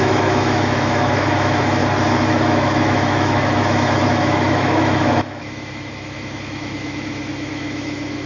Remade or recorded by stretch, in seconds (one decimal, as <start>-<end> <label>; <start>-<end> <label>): 0.0-1.8 remade; 1.8-2.3 recorded; 2.3-8.3 remade